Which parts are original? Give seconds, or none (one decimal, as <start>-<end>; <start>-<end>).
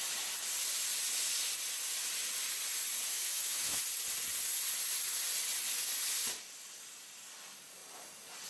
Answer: 0.0-3.1; 3.8-8.5